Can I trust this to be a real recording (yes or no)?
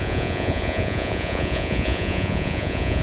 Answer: no